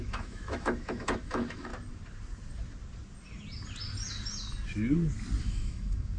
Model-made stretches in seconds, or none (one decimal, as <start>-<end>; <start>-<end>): 0.0-1.7; 5.4-6.2